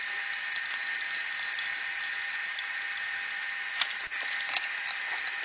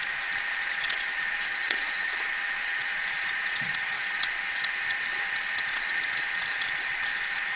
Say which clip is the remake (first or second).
second